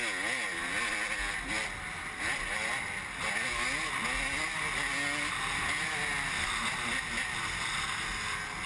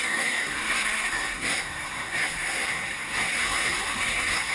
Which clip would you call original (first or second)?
first